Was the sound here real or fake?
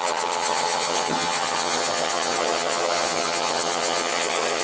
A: fake